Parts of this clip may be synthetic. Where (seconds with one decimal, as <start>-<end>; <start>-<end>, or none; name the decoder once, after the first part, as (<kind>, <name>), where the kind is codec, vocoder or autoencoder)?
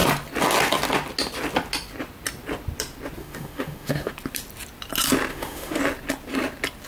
3.2-4.1 (autoencoder, DAC-VAE); 5.3-5.8